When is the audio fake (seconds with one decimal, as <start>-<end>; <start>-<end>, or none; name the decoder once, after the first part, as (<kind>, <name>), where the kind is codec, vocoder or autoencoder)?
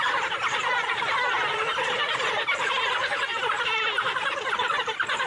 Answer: none